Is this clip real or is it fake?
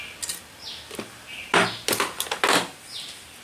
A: real